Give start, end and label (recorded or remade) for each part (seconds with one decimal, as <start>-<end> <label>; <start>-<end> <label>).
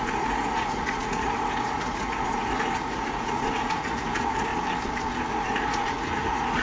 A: 0.0-4.5 remade; 4.5-5.3 recorded; 5.3-6.6 remade